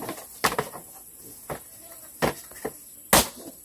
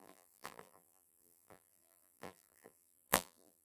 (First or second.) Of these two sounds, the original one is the first